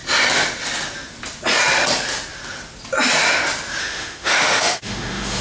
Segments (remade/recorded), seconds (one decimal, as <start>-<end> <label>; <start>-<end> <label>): 0.0-3.8 recorded; 3.8-5.4 remade